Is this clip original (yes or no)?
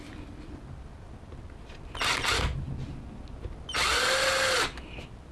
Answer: yes